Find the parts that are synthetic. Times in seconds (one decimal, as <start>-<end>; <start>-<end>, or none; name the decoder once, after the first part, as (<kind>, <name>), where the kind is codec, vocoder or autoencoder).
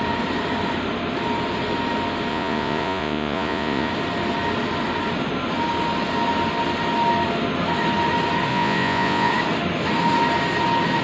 2.3-3.9 (vocoder, Vocos); 8.5-9.3